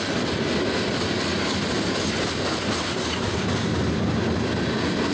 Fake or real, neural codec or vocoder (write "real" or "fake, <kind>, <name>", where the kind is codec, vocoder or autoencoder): real